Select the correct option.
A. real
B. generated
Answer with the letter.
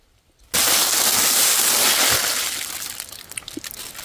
A